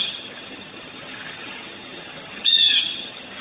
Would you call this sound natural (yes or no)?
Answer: no